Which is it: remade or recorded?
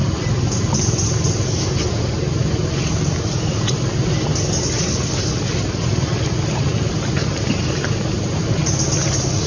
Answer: recorded